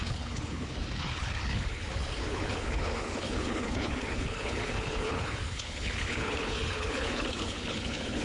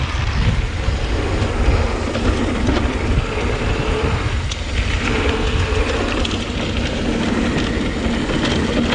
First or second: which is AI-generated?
first